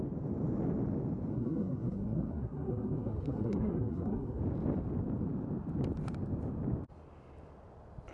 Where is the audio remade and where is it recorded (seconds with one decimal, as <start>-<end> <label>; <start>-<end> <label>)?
0.0-1.3 recorded; 1.3-4.4 remade; 4.4-8.1 recorded